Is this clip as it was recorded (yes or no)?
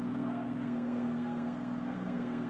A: no